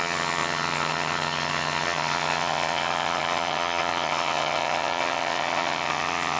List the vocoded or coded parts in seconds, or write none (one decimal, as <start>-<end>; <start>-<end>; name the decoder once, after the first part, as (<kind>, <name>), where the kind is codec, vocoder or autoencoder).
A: 0.0-6.4 (vocoder, HiFi-GAN)